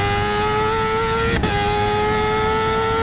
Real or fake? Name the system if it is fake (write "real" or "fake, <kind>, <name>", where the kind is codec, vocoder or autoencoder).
real